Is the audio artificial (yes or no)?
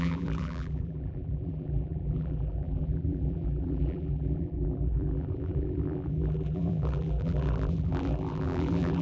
yes